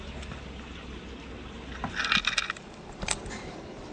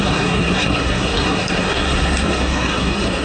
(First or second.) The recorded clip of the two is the first